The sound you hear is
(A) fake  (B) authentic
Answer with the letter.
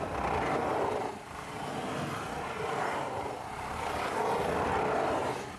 B